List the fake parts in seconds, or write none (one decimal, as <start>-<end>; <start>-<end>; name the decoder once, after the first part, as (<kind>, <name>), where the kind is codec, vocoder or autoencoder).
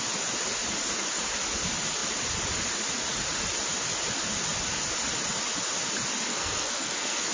6.3-7.3 (codec, SNAC)